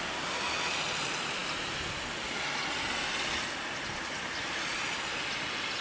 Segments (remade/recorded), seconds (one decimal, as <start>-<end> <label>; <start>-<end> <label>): 0.0-5.8 recorded